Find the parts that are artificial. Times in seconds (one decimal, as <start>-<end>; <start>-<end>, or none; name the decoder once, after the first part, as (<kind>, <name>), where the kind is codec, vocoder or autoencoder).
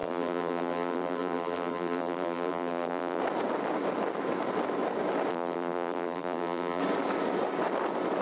0.0-3.2 (vocoder, BigVGAN v2); 5.3-6.8